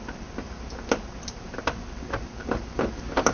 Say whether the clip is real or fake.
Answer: real